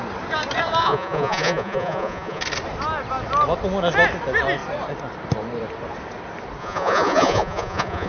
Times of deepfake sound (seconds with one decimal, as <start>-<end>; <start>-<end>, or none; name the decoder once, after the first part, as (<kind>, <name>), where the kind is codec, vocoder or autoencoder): 0.8-2.4 (vocoder, Vocos); 6.6-8.1